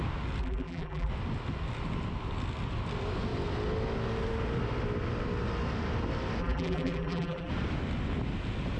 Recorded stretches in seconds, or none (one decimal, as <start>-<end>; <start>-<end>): 0.0-0.4; 1.1-6.4; 7.5-8.8